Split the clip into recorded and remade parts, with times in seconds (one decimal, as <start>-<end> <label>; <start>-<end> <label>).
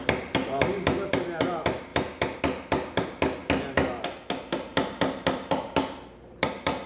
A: 0.0-4.7 recorded; 4.7-6.5 remade; 6.5-6.9 recorded